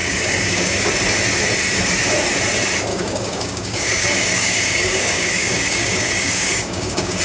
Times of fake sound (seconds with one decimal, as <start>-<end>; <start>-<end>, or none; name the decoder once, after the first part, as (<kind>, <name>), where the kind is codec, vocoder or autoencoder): 0.0-0.9 (codec, DAC); 2.9-7.2